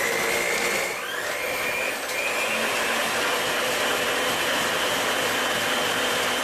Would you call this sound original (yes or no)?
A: yes